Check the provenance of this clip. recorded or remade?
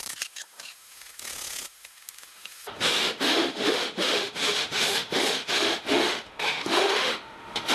remade